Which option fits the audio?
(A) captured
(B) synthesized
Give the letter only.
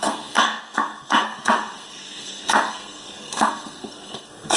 B